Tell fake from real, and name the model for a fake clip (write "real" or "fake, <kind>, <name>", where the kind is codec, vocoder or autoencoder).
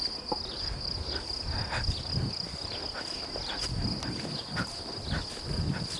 real